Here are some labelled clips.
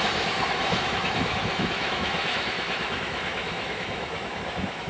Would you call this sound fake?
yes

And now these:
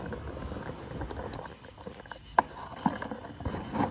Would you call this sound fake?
no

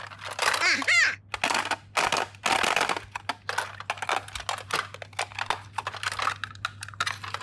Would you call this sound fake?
no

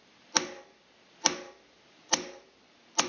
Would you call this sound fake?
no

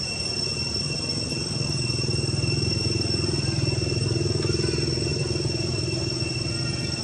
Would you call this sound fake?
no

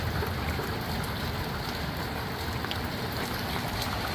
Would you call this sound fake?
no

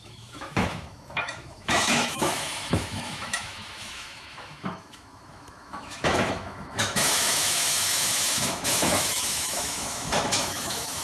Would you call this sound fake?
yes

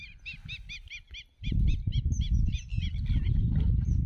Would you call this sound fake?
no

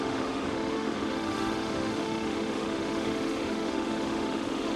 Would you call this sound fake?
yes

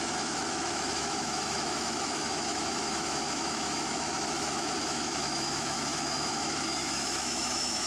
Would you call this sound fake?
yes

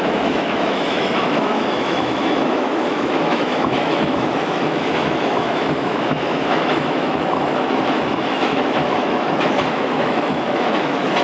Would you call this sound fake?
yes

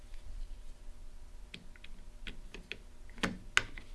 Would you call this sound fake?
no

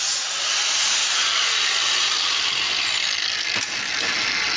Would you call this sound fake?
no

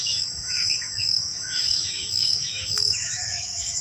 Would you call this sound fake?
yes